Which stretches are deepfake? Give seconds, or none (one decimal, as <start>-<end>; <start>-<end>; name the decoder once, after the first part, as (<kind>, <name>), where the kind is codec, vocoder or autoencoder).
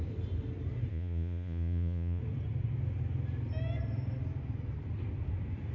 0.9-2.2 (vocoder, Vocos)